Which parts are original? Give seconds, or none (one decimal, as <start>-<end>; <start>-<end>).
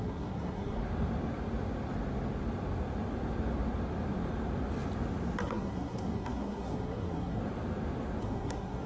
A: 0.8-5.4; 7.4-8.2